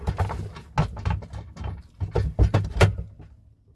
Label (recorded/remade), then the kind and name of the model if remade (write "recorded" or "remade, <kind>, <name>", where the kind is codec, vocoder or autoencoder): recorded